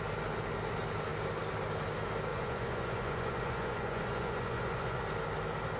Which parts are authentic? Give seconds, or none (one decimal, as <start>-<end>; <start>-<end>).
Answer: 0.0-2.3; 5.0-5.8